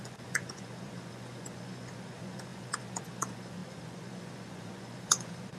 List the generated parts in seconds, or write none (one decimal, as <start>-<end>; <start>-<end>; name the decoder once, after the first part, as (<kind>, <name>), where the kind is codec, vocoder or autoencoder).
0.0-5.6 (vocoder, Vocos)